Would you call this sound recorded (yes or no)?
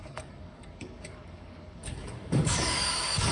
no